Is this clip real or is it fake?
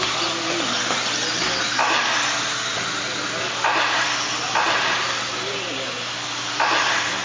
real